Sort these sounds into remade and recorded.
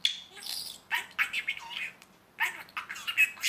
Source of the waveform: recorded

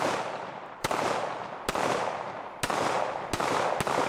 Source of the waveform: recorded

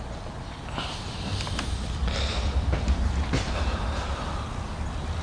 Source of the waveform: recorded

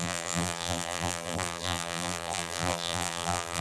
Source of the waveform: remade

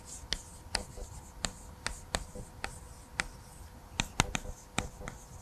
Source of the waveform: recorded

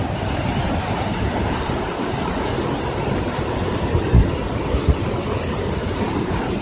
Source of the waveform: recorded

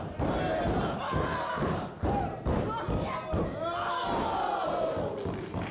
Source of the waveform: recorded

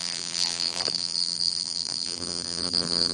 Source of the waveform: remade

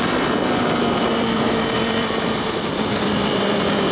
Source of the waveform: remade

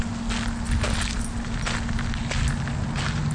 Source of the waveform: recorded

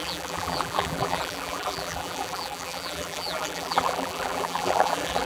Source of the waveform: remade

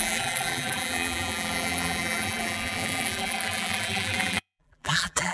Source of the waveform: remade